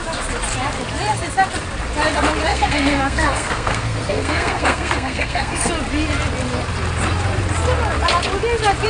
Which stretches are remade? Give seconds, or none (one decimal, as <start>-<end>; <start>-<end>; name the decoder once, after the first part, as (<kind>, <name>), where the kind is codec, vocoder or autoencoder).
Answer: 2.5-5.7 (codec, SNAC)